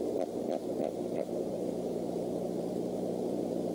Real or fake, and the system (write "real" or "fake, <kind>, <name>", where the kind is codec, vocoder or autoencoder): fake, vocoder, BigVGAN v2